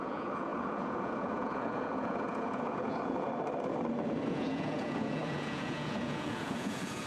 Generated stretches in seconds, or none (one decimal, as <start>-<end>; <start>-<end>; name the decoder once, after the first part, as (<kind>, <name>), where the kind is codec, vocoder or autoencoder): 0.0-3.3 (vocoder, Vocos); 4.3-7.1